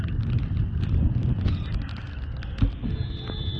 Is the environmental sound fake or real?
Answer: real